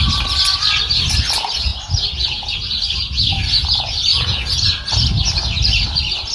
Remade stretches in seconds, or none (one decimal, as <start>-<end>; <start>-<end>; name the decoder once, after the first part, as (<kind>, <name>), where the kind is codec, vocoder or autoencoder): 4.1-4.6 (vocoder, Vocos)